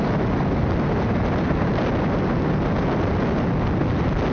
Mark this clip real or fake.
real